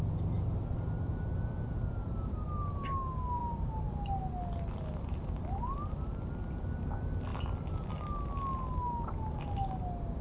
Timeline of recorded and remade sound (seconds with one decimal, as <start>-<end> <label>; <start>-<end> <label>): 0.0-10.2 recorded